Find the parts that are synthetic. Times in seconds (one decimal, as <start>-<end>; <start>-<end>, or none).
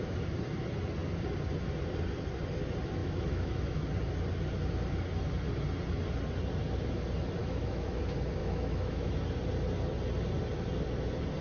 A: 3.0-3.9; 7.4-8.0; 8.4-9.1